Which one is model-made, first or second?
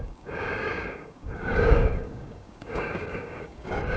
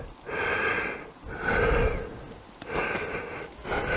first